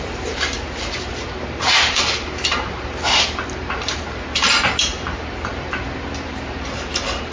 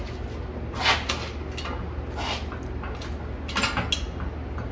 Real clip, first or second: second